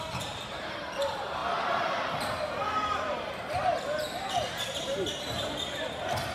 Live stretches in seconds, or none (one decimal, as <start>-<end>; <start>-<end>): none